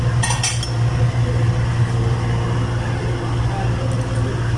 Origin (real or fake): real